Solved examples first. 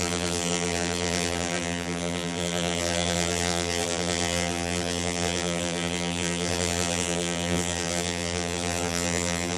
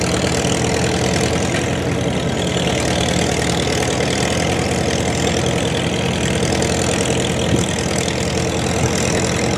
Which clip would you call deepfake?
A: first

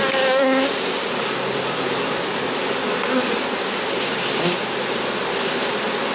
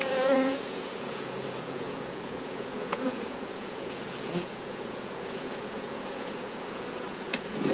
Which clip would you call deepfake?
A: second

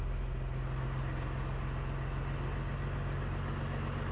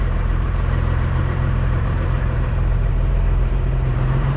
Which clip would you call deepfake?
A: second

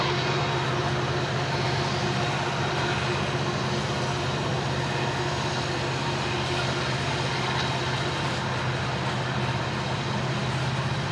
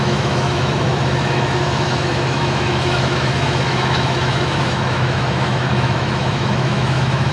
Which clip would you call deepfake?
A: second